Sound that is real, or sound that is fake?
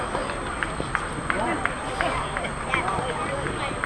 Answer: real